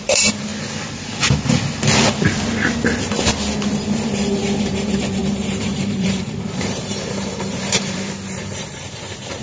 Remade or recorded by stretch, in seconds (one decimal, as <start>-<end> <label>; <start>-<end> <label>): 0.0-0.5 remade; 0.5-4.6 recorded; 4.6-9.4 remade